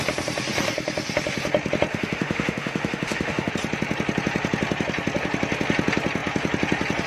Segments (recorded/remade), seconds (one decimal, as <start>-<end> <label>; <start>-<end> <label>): 0.0-1.9 recorded; 1.9-3.5 remade; 3.5-7.1 recorded